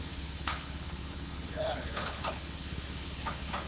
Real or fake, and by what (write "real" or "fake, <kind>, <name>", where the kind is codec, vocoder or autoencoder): fake, codec, HILCodec